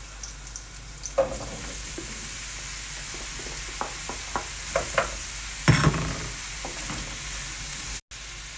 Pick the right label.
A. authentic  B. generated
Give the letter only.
A